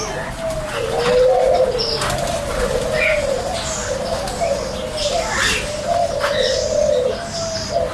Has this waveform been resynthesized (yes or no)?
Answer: no